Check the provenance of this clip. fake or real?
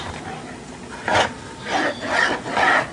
real